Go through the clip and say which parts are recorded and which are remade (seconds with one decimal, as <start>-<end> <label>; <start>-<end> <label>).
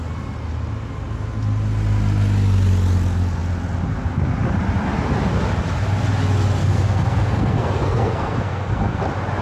0.0-6.6 recorded; 6.6-9.0 remade; 9.0-9.4 recorded